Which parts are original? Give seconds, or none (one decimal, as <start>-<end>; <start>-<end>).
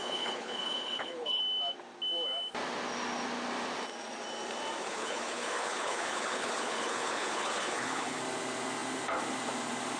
1.4-4.8; 8.2-10.0